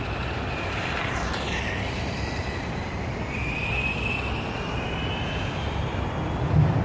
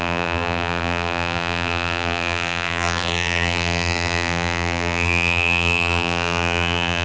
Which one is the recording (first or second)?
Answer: first